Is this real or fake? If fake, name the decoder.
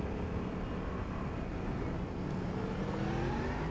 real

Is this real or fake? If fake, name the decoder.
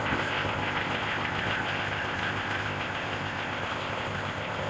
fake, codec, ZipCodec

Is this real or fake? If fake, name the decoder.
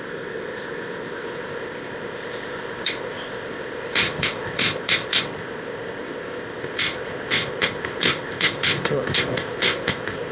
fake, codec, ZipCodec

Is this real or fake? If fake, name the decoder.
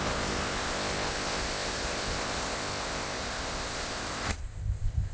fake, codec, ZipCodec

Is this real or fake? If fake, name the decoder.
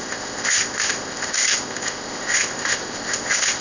fake, codec, ZipCodec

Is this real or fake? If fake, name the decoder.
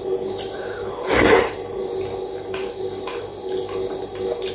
real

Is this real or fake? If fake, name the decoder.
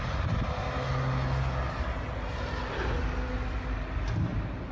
real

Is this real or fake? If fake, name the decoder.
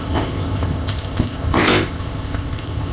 fake, codec, ZipCodec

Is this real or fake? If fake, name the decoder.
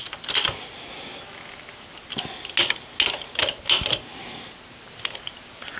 real